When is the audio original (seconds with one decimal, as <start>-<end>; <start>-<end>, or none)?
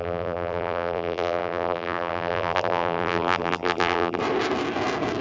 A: 4.2-5.2